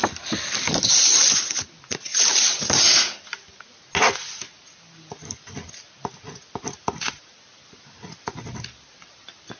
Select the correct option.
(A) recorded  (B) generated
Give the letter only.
A